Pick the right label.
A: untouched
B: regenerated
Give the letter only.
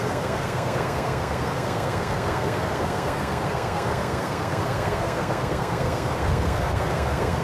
B